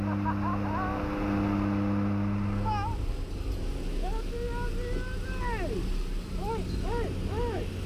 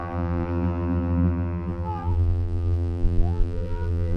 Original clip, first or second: first